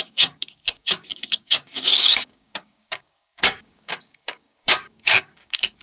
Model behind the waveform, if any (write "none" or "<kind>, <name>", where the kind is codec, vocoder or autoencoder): codec, DAC